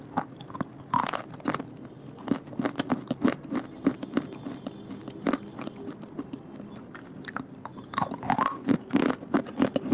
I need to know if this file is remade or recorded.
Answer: recorded